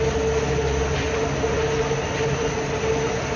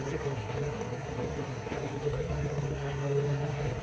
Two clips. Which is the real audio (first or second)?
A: first